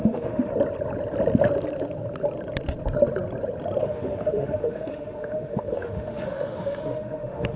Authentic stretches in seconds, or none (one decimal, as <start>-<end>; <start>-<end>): 0.5-3.8